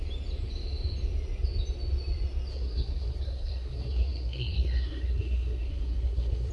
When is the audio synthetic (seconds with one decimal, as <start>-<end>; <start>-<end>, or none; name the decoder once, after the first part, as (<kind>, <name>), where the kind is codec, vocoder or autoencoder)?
2.5-6.5 (codec, SNAC)